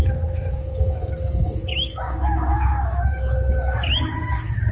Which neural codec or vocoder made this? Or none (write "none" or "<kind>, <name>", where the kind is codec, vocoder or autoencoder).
autoencoder, DAC-VAE